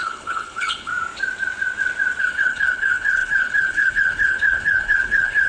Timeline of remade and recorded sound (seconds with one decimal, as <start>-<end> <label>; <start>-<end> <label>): 0.0-0.9 remade; 0.9-2.2 recorded; 2.2-5.5 remade